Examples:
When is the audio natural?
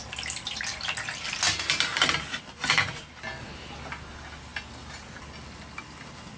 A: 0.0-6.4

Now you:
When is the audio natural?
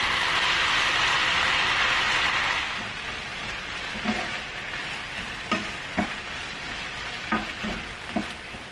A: 0.0-8.7